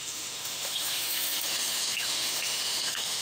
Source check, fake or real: fake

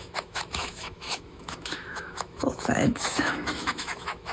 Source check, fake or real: fake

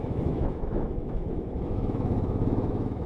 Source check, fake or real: fake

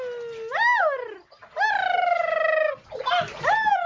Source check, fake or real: real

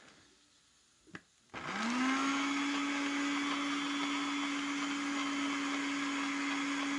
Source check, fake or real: real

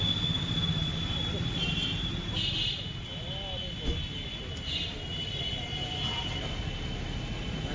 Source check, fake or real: real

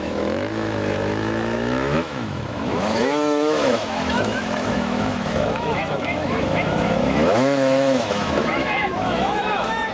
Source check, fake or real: fake